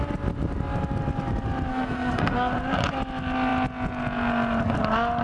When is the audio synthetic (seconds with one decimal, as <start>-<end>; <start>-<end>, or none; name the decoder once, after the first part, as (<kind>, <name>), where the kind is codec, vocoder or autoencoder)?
1.7-2.5 (codec, SNAC)